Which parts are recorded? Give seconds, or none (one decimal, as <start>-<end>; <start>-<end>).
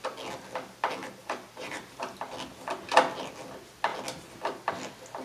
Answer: 0.0-1.0; 2.0-5.2